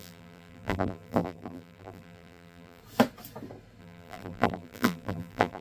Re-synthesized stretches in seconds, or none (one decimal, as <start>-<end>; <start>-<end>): 0.0-2.8; 3.8-5.6